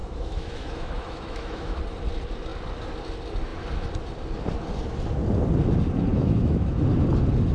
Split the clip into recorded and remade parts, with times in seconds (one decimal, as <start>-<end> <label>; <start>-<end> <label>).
0.0-1.8 remade; 1.8-6.1 recorded; 6.1-6.8 remade; 6.8-7.5 recorded